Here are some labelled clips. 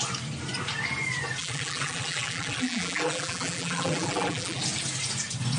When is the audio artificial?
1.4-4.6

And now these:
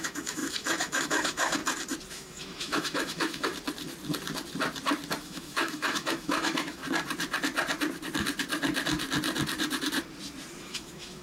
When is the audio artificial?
0.0-1.6; 2.1-3.5; 5.2-6.8; 10.6-11.2

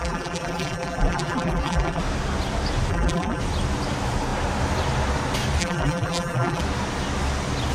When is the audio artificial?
0.0-2.0; 2.9-3.4; 5.6-6.6

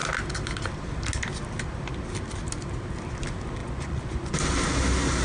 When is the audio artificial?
3.6-4.3

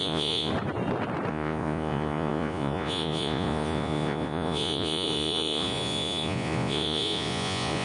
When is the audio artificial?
0.0-0.5; 1.3-7.8